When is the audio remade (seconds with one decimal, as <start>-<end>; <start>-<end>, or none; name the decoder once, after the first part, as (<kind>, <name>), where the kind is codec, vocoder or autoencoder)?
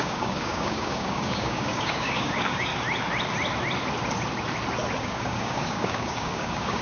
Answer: 0.0-2.7 (codec, DAC); 5.0-6.8